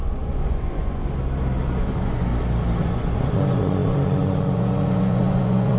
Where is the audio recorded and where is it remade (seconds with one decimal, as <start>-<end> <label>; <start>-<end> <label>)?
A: 0.0-1.0 remade; 1.0-1.8 recorded; 1.8-2.3 remade; 2.3-2.8 recorded; 2.8-5.8 remade